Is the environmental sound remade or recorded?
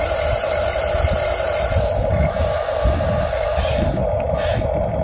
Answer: recorded